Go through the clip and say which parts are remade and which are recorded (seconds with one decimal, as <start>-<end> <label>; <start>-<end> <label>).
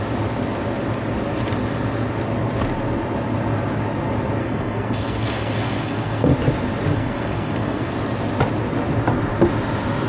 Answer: 0.0-4.4 recorded; 4.4-6.3 remade; 6.3-6.9 recorded; 6.9-7.9 remade; 7.9-10.1 recorded